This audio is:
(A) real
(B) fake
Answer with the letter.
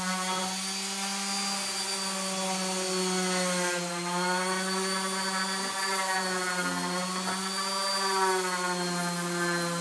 A